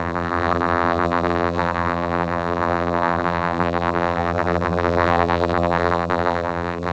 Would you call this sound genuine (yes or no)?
no